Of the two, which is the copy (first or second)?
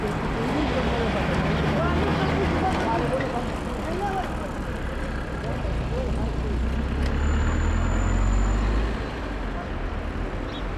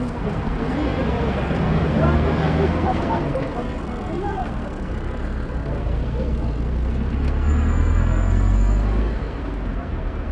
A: second